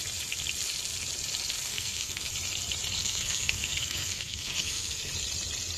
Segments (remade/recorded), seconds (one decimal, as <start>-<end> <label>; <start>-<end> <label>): 0.0-1.7 recorded; 1.7-2.3 remade; 2.3-3.0 recorded; 3.0-5.0 remade; 5.0-5.8 recorded